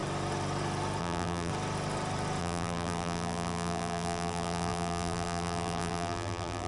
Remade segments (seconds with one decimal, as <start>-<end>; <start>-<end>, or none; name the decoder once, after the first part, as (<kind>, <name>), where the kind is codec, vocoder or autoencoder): 1.0-1.5 (vocoder, BigVGAN v2); 2.4-6.7